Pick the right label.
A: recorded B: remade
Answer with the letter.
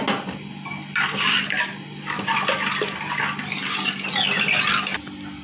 A